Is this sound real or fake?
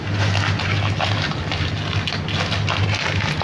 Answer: real